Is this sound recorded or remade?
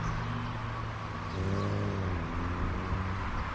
recorded